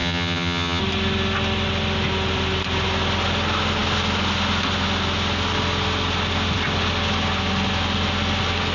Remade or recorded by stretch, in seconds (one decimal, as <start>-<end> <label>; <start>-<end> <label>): 0.0-0.8 remade; 0.8-8.7 recorded